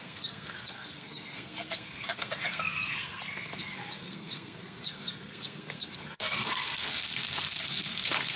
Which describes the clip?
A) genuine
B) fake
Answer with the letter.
B